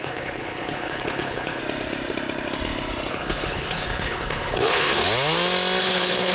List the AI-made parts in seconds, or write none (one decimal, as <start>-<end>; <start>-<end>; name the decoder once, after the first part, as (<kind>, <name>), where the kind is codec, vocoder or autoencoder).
0.0-1.6 (codec, HILCodec); 3.1-5.0; 5.8-6.3